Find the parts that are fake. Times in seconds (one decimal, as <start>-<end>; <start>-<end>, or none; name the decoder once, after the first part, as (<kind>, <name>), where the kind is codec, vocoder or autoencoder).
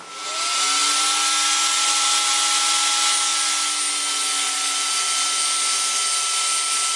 none